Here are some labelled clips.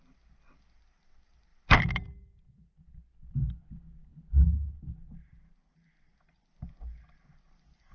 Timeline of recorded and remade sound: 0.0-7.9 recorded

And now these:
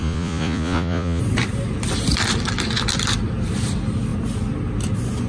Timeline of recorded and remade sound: 0.0-1.2 remade; 1.2-5.3 recorded

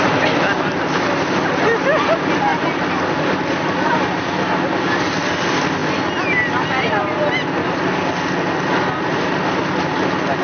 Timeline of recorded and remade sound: 0.0-10.4 recorded

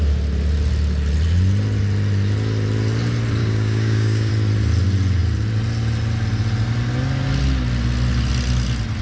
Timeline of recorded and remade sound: 0.0-3.4 recorded; 3.4-4.3 remade; 4.3-9.0 recorded

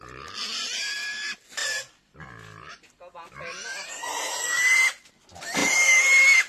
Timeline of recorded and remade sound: 0.0-6.5 recorded